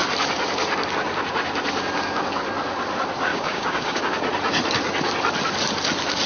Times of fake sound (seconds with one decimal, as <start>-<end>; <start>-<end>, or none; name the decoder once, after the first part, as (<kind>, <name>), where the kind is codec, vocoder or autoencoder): 3.3-4.0 (codec, DAC)